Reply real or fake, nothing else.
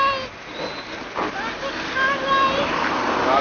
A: real